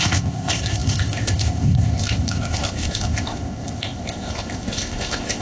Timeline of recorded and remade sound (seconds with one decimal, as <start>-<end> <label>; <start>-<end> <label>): 0.0-5.4 remade